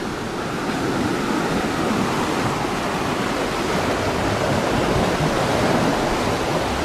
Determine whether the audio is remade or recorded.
recorded